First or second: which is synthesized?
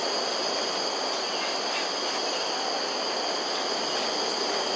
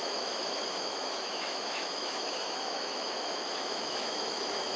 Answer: second